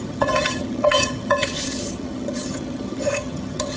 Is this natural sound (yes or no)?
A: no